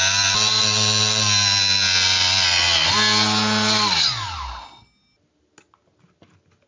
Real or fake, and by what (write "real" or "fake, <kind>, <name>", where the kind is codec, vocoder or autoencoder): real